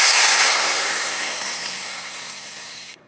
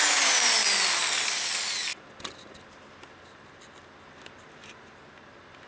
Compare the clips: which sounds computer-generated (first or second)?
first